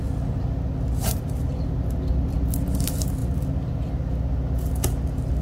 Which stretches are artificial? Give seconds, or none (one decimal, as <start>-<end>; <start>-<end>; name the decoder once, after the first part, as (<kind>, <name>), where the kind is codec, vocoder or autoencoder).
0.9-1.5 (vocoder, BigVGAN v2)